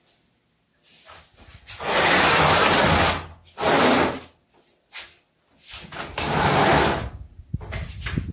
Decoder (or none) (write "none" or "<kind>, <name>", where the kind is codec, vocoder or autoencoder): none